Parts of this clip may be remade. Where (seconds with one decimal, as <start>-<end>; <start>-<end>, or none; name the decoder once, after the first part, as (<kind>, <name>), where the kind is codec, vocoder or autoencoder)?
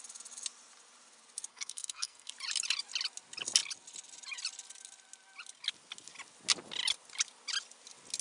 1.5-2.3 (codec, SNAC)